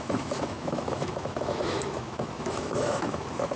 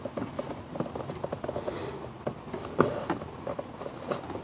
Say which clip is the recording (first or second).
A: second